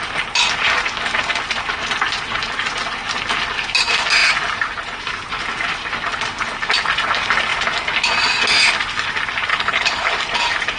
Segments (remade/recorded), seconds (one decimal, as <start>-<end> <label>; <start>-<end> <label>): 0.0-9.5 recorded; 9.5-10.1 remade; 10.1-10.8 recorded